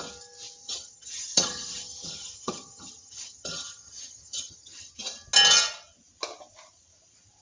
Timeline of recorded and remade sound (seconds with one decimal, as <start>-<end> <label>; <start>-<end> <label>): 0.0-0.6 recorded; 0.6-4.9 remade; 4.9-7.4 recorded